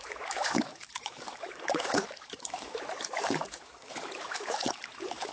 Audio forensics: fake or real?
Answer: fake